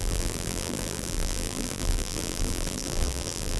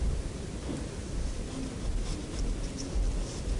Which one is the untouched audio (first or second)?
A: second